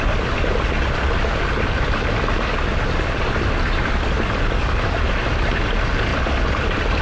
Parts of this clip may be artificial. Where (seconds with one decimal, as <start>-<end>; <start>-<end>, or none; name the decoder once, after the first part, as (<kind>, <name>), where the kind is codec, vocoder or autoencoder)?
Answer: none